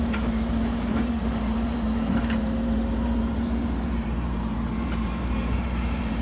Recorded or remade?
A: remade